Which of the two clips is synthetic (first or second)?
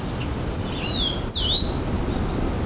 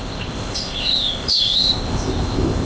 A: second